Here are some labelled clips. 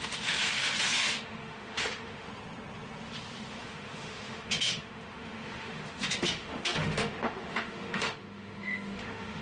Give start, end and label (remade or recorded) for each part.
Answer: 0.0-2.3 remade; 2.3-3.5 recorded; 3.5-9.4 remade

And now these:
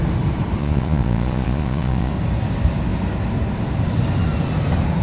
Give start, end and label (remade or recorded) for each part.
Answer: 0.0-0.6 recorded; 0.6-2.1 remade; 2.1-5.0 recorded

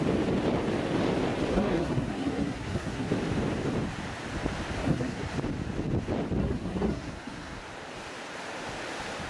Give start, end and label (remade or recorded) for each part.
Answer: 0.0-1.5 recorded; 1.5-3.1 remade; 3.1-4.8 recorded; 4.8-5.3 remade; 5.3-6.4 recorded; 6.4-7.6 remade; 7.6-9.3 recorded

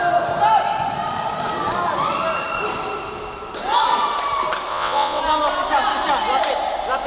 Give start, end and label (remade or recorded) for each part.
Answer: 0.0-4.7 recorded; 4.7-5.2 remade; 5.2-7.1 recorded

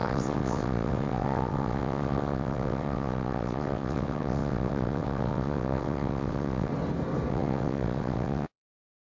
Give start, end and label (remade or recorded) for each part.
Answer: 0.0-6.7 remade; 6.7-7.3 recorded; 7.3-9.1 remade

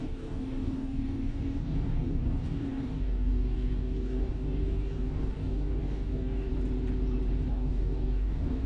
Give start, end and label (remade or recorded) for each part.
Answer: 0.0-6.5 remade; 6.5-7.5 recorded; 7.5-8.7 remade

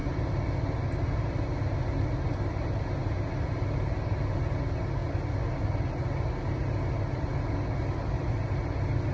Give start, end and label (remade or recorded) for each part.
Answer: 0.0-9.1 recorded